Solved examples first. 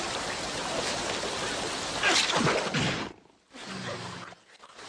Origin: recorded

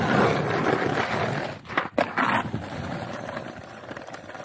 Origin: recorded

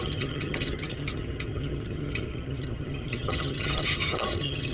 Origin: remade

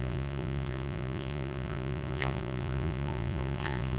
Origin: remade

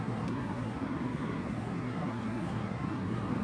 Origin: remade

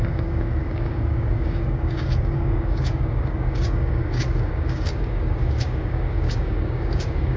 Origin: remade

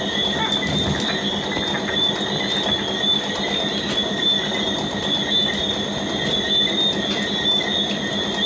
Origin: recorded